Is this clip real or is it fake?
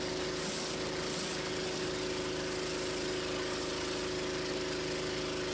real